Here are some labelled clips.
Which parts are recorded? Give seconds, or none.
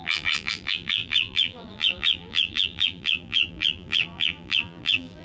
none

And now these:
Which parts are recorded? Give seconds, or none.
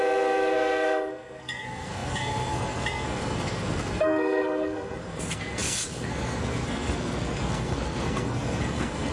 none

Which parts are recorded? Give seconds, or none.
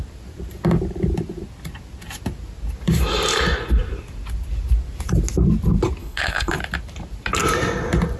0.0-6.0; 6.5-8.2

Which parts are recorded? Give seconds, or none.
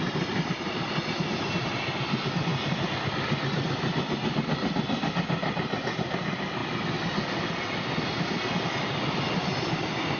0.0-10.2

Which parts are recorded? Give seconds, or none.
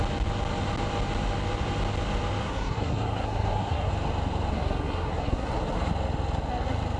0.0-2.4; 3.9-4.5; 5.5-7.0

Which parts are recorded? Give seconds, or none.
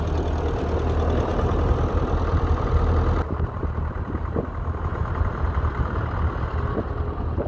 0.0-7.5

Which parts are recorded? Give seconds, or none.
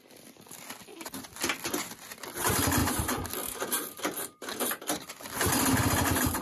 0.0-0.8; 2.2-2.8; 5.1-6.4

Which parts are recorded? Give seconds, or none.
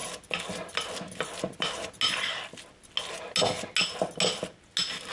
0.0-5.1